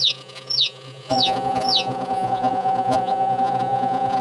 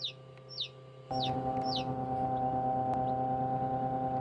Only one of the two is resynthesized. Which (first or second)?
first